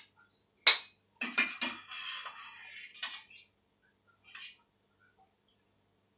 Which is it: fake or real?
real